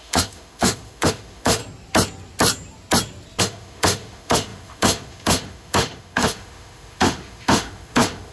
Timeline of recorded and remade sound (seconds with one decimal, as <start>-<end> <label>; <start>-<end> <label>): 0.0-1.6 remade; 1.6-3.4 recorded; 3.4-8.3 remade